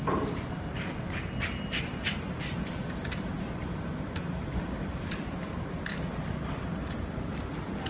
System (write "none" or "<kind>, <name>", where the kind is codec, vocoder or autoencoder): none